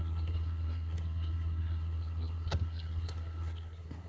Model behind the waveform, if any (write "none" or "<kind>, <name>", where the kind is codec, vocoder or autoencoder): codec, SNAC